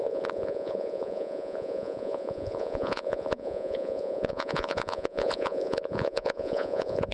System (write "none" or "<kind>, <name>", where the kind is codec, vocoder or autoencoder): vocoder, Vocos